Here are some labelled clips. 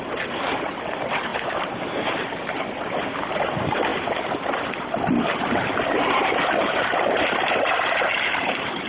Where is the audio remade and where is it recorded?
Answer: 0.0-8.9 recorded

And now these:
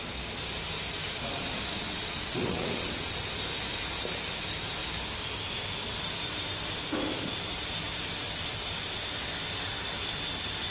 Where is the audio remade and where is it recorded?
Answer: 0.0-1.8 recorded; 1.8-3.1 remade; 3.1-10.7 recorded

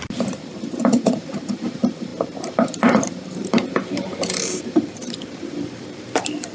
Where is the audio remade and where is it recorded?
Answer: 0.0-6.5 remade

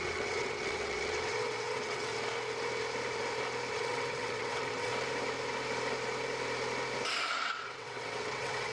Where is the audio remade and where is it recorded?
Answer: 0.0-2.1 remade; 2.1-3.8 recorded; 3.8-4.9 remade; 4.9-7.3 recorded; 7.3-8.7 remade

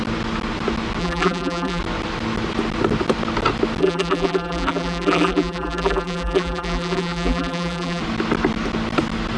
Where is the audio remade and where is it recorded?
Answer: 0.0-1.0 recorded; 1.0-1.8 remade; 1.8-3.8 recorded; 3.8-8.0 remade; 8.0-9.4 recorded

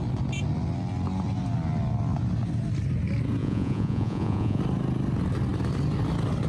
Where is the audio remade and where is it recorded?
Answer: 0.0-3.4 recorded; 3.4-4.6 remade; 4.6-6.5 recorded